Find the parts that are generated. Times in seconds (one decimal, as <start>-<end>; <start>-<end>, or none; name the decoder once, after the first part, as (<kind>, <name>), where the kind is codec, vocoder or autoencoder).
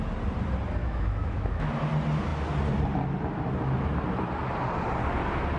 0.8-1.7 (autoencoder, DAC-VAE)